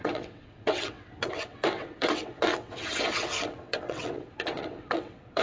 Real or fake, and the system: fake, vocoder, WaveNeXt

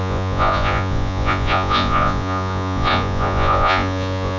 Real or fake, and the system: fake, vocoder, Vocos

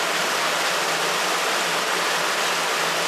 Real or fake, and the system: real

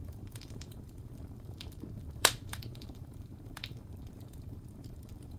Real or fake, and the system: fake, vocoder, BigVGAN v2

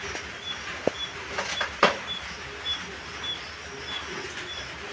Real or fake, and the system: real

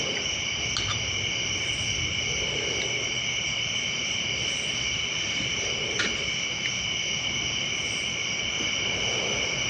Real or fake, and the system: real